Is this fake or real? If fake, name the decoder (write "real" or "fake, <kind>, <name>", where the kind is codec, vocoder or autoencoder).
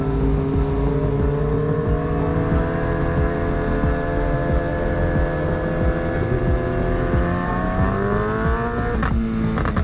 real